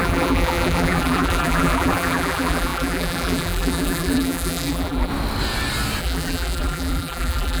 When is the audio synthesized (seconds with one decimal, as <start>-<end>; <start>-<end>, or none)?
0.0-5.1; 6.0-7.6